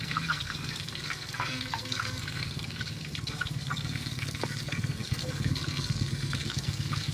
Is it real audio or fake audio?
fake